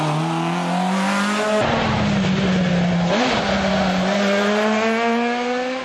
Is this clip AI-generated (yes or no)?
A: no